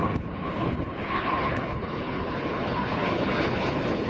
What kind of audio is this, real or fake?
fake